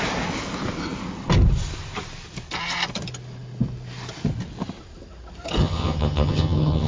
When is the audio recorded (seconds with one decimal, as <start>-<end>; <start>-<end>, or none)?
0.0-5.6